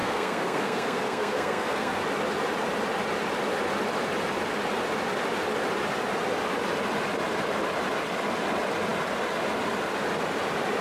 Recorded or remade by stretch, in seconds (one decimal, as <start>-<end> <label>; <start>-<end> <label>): 0.0-2.0 remade; 2.0-10.8 recorded